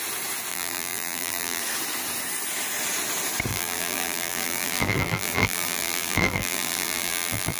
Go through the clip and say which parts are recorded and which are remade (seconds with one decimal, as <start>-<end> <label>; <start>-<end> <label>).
0.0-0.5 recorded; 0.5-1.6 remade; 1.6-3.5 recorded; 3.5-7.6 remade